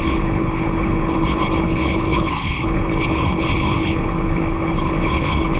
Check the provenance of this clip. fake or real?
fake